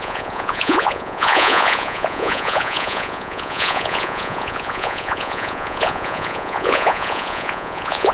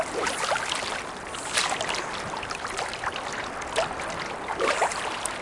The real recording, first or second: second